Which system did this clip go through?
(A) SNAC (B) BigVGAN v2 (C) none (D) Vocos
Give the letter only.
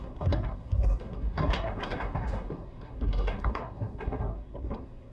A